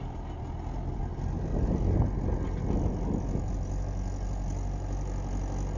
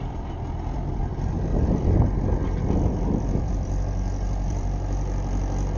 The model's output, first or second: second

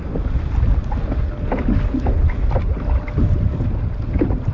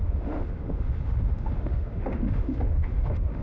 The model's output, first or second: second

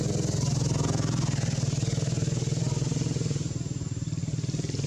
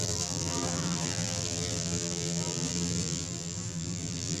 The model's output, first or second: second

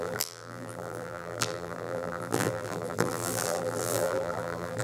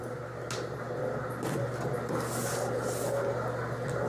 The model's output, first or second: first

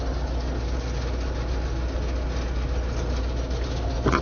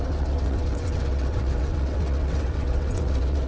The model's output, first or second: second